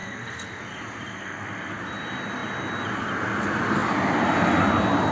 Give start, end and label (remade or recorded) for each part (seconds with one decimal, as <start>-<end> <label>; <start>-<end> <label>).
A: 0.0-0.6 remade; 0.6-1.1 recorded; 1.1-1.8 remade; 1.8-5.1 recorded